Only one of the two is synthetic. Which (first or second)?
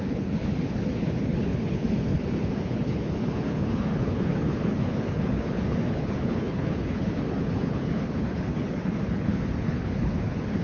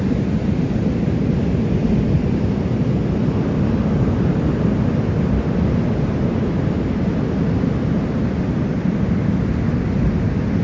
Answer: first